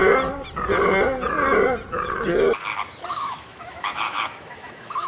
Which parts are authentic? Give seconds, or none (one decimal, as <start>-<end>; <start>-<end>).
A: 0.0-3.1